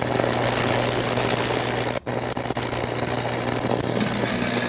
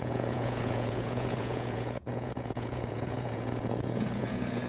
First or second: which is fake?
second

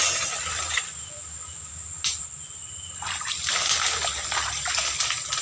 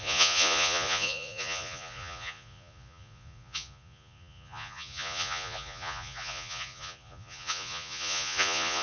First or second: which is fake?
second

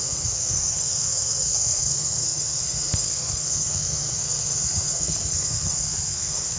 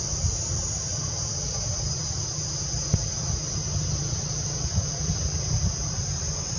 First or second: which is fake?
first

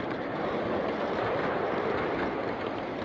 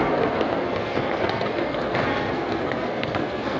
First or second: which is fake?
second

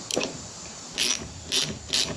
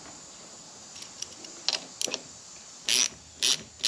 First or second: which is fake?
first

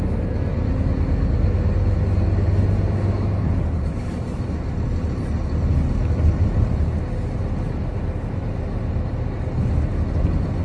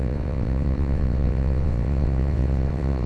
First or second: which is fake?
second